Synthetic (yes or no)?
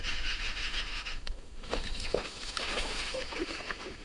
yes